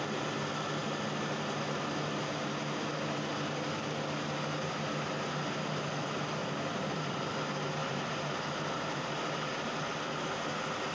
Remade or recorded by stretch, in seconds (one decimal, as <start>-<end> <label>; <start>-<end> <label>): 0.0-6.4 recorded; 6.4-7.3 remade; 7.3-7.8 recorded; 7.8-9.2 remade; 9.2-10.9 recorded